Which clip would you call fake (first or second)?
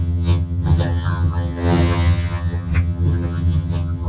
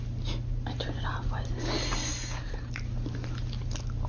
first